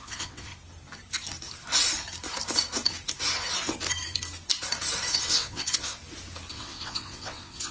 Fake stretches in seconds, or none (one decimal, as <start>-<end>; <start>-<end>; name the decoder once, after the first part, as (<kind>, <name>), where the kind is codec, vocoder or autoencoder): 0.0-0.5 (vocoder, WaveNeXt); 5.1-6.0; 6.5-7.7